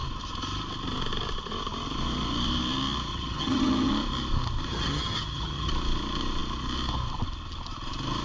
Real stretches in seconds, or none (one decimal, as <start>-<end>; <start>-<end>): 0.0-3.1; 3.9-4.7; 5.7-8.2